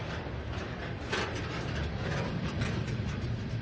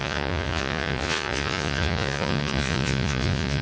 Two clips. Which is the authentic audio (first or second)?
first